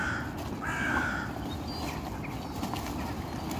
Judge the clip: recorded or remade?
recorded